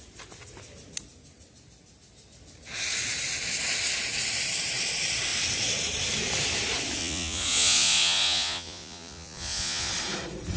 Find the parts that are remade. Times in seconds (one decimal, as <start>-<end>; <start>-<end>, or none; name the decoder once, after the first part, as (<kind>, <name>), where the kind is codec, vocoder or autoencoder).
7.0-9.9 (vocoder, Vocos)